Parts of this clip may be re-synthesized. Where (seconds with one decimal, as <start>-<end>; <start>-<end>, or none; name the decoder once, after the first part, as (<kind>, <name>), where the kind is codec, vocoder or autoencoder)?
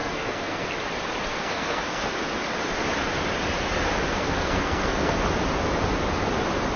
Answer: 0.0-0.7 (codec, SNAC); 1.3-2.0; 4.1-5.2